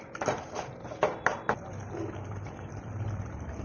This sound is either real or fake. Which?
real